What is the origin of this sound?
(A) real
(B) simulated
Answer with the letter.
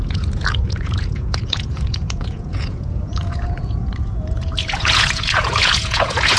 B